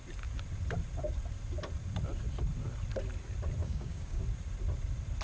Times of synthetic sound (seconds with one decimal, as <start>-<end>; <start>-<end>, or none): 3.6-4.2